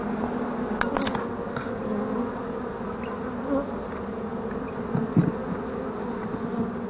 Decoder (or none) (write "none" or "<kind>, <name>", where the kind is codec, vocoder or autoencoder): none